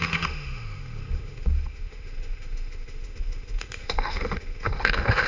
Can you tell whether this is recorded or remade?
remade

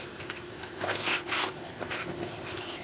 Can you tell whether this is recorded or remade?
remade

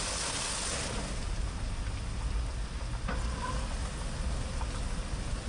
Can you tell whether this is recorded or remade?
recorded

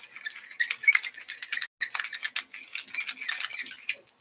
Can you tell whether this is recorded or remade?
recorded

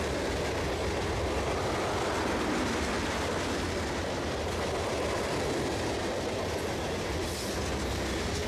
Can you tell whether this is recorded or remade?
recorded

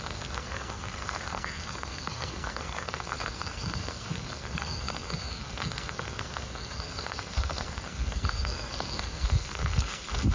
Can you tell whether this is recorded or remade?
remade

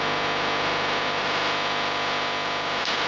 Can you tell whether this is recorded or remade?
recorded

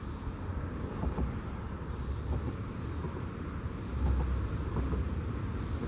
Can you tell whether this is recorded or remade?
recorded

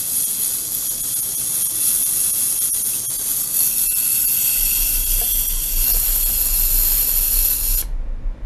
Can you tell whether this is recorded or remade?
recorded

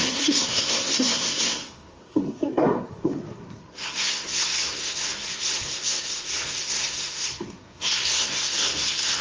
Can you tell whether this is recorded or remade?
remade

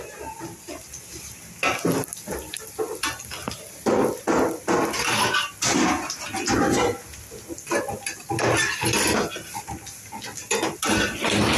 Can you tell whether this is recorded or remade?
recorded